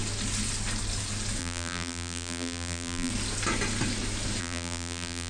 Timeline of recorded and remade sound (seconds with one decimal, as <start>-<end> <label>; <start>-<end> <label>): 0.0-1.4 recorded; 1.4-3.1 remade; 3.1-4.4 recorded; 4.4-5.3 remade